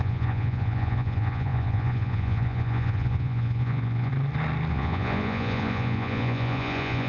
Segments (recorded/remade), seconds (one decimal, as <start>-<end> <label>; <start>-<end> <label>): 0.0-4.1 remade; 4.1-4.7 recorded; 4.7-7.1 remade